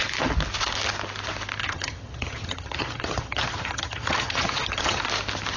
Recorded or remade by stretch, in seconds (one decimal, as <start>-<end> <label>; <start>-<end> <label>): 0.0-1.6 recorded; 1.6-5.0 remade; 5.0-5.6 recorded